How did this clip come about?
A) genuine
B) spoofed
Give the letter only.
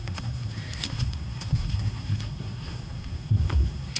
B